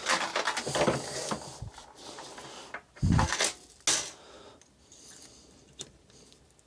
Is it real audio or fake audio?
real